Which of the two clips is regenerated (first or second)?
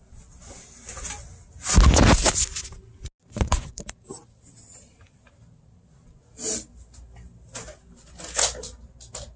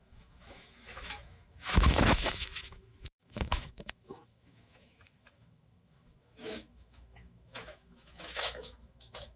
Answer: second